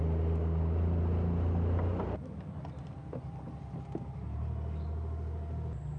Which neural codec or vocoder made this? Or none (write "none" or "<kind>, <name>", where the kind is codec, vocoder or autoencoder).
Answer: none